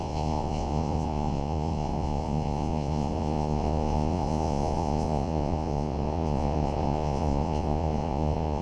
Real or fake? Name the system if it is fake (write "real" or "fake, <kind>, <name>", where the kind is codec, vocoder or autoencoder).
fake, vocoder, Vocos